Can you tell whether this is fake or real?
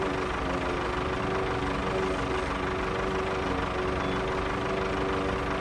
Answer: real